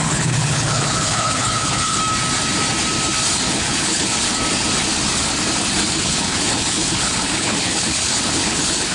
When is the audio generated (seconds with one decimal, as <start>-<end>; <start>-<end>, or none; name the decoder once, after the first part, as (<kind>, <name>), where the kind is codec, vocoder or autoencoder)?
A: 0.0-2.0 (codec, HILCodec); 3.6-4.3; 6.0-8.9

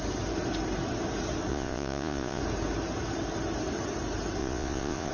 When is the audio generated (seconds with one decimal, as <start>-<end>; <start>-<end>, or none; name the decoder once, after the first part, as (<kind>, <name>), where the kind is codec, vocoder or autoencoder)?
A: 1.5-2.4 (vocoder, Vocos); 4.4-5.1